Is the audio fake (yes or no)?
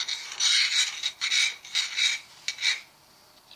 no